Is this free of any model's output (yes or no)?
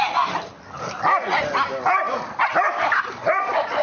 yes